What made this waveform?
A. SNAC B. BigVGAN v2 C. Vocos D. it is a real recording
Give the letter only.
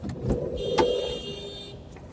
D